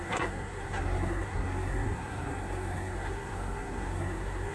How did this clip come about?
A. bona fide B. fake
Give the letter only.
B